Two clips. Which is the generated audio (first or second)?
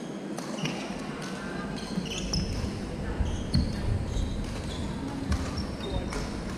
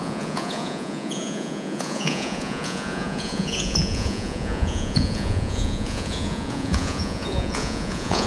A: second